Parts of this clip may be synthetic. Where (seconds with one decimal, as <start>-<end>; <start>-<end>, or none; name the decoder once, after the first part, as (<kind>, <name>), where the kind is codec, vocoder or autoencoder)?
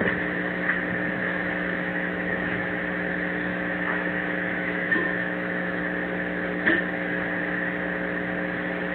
1.2-2.8 (autoencoder, DAC-VAE); 3.5-5.8